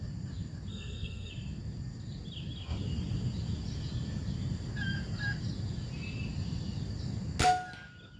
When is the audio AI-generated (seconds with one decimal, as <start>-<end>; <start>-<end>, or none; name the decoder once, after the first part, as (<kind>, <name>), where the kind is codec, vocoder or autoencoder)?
0.7-1.3 (codec, SNAC)

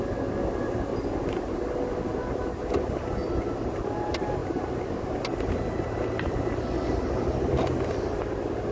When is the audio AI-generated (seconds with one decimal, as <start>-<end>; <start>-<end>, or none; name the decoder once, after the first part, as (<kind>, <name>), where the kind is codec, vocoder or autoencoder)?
none

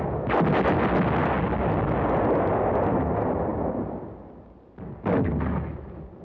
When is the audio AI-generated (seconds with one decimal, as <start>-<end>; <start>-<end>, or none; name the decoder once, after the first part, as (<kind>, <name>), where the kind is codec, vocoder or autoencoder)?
none